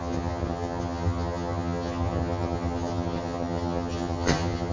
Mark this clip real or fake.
fake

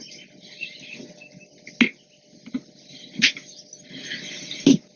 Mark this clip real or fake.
real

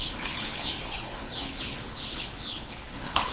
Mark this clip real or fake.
fake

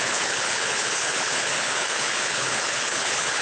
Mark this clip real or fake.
fake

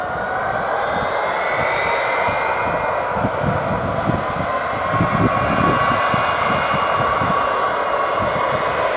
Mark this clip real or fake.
real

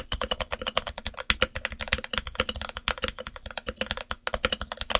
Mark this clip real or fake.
real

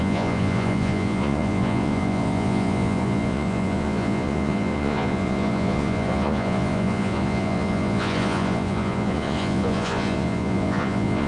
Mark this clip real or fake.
fake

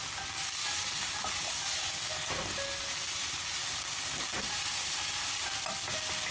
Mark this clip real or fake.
real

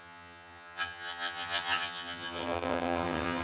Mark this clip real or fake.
fake